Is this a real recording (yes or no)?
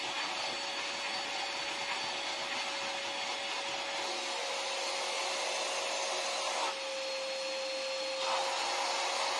yes